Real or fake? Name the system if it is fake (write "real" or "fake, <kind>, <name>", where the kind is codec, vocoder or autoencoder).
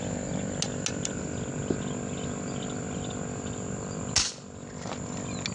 real